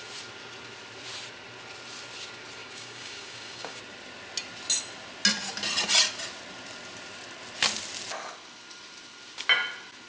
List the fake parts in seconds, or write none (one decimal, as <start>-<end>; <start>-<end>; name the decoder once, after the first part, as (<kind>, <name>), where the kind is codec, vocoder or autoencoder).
2.6-3.8 (codec, DAC)

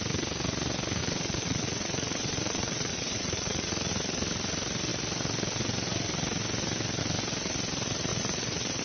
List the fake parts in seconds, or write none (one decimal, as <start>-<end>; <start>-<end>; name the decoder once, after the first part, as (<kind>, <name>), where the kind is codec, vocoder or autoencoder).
1.0-3.9 (vocoder, Vocos); 8.1-8.8

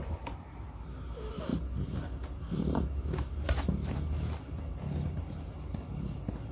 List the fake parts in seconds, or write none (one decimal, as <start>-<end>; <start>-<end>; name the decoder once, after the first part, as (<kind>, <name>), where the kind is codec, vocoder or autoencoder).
none

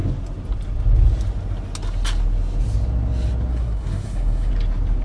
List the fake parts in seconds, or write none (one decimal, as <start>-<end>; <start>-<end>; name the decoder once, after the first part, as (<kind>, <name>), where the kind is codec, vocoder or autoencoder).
3.5-4.5 (codec, SNAC)

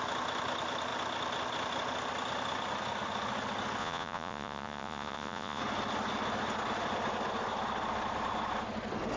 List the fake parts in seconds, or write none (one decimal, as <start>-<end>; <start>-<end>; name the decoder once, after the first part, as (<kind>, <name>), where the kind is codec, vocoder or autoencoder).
3.8-5.6 (vocoder, Vocos)

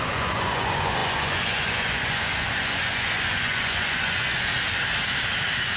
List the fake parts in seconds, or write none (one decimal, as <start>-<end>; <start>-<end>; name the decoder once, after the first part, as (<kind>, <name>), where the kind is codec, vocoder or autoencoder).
0.0-4.5 (vocoder, Vocos)

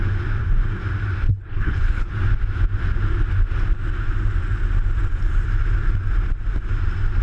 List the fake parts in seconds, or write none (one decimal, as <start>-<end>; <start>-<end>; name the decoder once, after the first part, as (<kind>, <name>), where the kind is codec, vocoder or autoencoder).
1.3-2.1 (codec, HILCodec)